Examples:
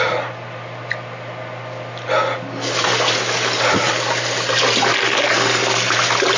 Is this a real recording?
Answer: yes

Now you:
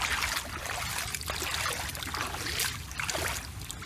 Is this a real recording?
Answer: yes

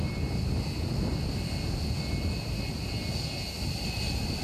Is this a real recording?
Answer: yes